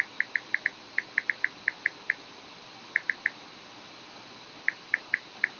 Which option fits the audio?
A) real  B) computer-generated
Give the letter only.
A